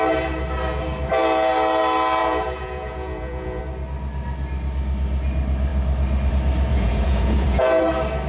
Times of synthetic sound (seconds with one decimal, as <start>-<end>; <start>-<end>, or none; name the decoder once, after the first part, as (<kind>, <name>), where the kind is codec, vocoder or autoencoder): 2.2-3.6 (vocoder, Vocos); 6.7-7.8